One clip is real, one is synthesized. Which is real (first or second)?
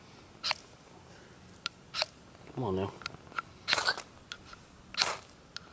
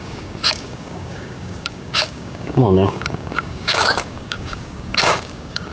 first